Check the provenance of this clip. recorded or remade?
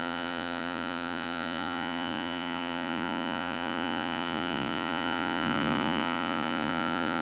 remade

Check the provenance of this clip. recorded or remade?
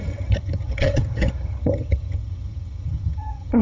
remade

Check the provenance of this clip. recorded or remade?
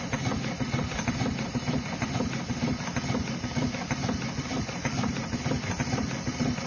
recorded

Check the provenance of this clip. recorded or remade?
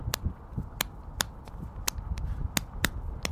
recorded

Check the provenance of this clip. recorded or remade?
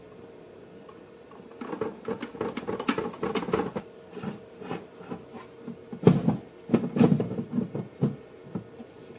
recorded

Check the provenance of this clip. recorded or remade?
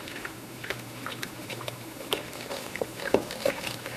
remade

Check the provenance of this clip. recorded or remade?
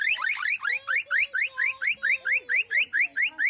recorded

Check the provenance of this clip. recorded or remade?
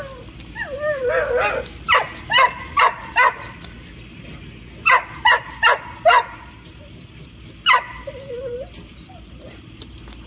recorded